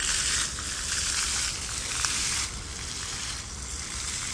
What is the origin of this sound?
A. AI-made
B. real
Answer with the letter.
B